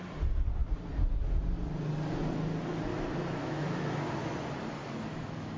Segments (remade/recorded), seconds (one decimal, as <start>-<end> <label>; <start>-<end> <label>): 0.0-2.9 recorded; 2.9-4.3 remade; 4.3-4.8 recorded; 4.8-5.6 remade

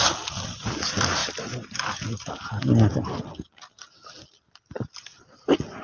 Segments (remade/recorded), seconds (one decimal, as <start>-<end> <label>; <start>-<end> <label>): 0.0-5.8 recorded

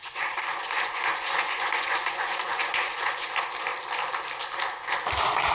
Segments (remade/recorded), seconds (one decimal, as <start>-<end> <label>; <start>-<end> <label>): 0.0-3.3 remade; 3.3-5.5 recorded

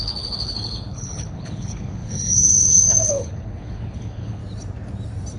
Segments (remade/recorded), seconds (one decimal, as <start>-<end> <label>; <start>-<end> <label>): 0.0-4.4 remade; 4.4-5.4 recorded

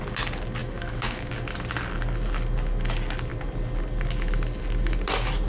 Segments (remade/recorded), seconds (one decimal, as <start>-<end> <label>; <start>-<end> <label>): 0.0-0.6 recorded; 0.6-1.3 remade; 1.3-5.5 recorded

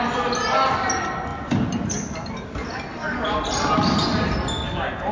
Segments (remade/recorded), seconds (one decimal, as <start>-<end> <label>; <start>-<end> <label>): 0.0-5.1 recorded

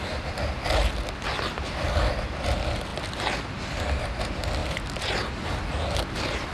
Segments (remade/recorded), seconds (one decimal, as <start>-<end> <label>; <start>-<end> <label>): 0.0-6.5 recorded